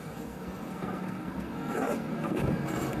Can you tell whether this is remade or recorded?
remade